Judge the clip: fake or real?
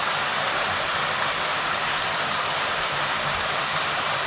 real